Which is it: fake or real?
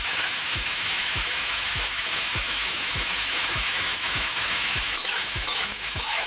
fake